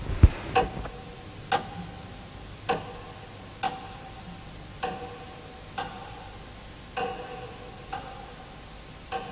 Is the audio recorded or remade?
recorded